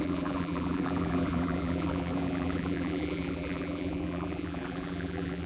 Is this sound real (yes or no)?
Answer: no